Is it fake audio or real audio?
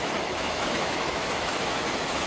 fake